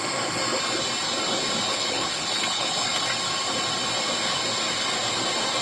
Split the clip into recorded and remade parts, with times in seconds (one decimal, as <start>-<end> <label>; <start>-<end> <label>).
0.0-1.7 recorded; 1.7-2.9 remade; 2.9-5.6 recorded